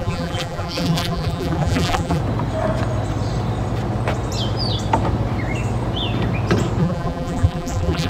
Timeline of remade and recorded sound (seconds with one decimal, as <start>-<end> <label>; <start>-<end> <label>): 0.0-2.2 remade; 2.2-6.8 recorded; 6.8-8.1 remade